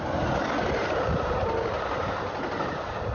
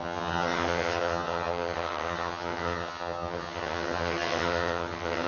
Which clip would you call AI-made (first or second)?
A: second